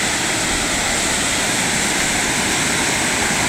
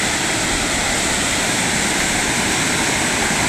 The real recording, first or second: first